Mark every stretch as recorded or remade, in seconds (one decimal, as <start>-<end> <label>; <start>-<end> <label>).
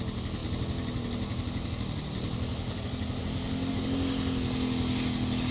0.0-5.5 recorded